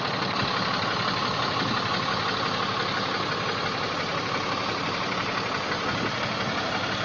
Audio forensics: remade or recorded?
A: recorded